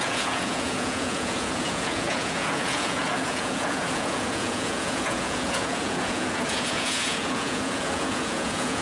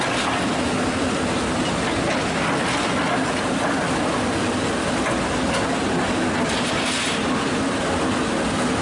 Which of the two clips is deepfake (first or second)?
first